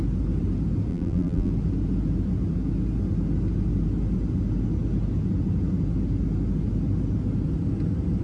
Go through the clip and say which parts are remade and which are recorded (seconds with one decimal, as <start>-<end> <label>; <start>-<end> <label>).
0.0-0.9 recorded; 0.9-1.5 remade; 1.5-8.2 recorded